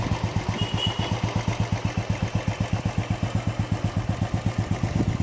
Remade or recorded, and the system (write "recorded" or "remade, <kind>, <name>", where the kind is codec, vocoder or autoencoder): recorded